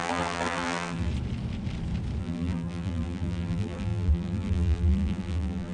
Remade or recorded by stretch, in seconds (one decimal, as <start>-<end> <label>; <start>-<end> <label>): 0.0-1.1 remade; 1.1-2.2 recorded; 2.2-5.7 remade